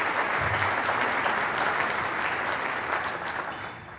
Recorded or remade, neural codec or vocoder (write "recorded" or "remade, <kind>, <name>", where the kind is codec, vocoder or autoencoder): recorded